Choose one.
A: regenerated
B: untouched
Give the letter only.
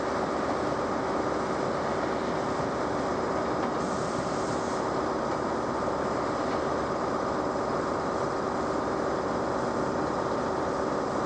B